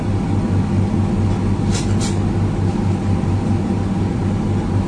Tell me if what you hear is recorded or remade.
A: recorded